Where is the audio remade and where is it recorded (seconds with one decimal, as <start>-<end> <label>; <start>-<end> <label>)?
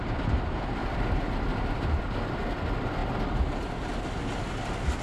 0.0-0.8 recorded; 0.8-2.0 remade; 2.0-5.0 recorded